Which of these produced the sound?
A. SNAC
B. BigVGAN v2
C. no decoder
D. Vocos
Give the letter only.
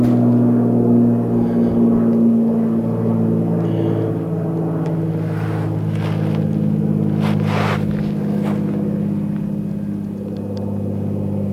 C